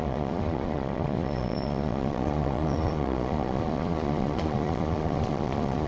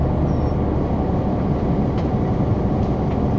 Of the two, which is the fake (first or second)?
first